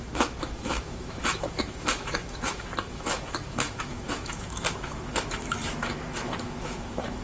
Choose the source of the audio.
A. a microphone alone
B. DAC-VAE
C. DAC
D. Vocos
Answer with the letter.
B